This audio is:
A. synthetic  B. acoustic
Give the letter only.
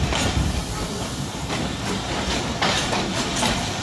A